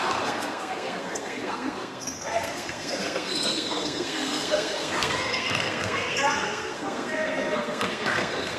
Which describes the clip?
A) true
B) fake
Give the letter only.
B